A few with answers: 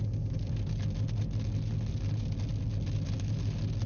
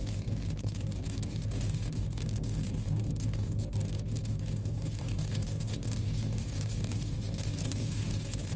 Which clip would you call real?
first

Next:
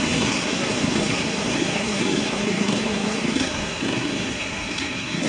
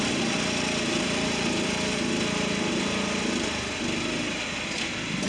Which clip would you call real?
second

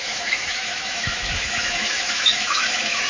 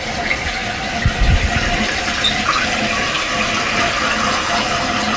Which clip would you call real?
second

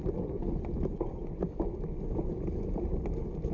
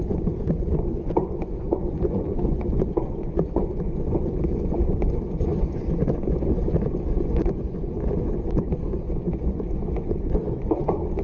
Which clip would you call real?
first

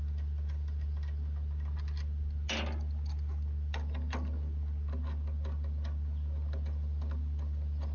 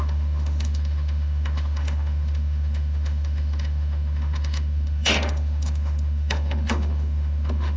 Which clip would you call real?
first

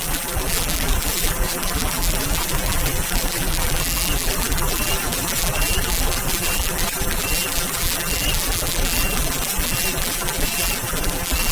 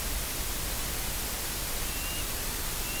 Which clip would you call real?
second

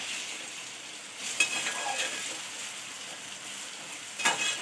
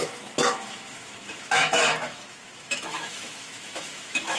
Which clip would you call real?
first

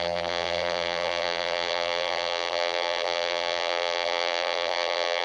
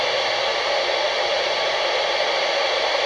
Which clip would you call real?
second